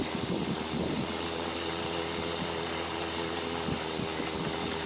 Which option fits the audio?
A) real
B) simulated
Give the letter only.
A